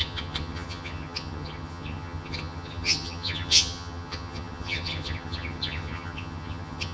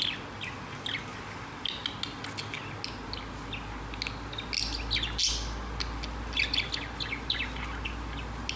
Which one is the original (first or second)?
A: second